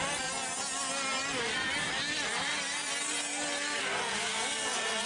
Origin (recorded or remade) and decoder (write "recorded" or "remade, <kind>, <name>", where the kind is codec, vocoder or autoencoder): recorded